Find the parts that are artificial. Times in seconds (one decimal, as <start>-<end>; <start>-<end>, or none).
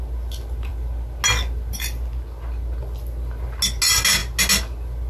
none